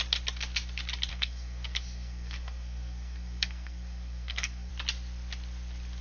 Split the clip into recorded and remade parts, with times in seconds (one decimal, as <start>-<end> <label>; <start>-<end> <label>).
0.0-1.1 recorded; 1.1-4.7 remade; 4.7-6.0 recorded